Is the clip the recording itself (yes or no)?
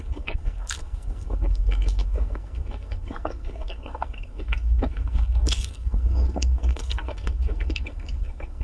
no